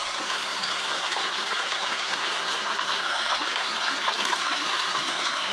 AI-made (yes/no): yes